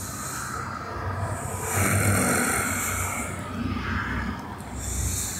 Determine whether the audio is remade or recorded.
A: recorded